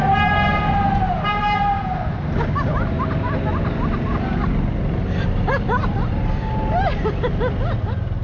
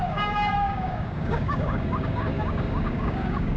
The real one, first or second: first